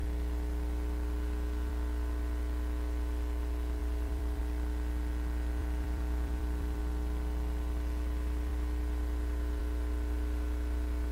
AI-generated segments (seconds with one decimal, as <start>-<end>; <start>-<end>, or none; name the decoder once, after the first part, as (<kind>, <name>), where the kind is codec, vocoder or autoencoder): 3.8-4.4 (vocoder, BigVGAN v2); 5.6-6.8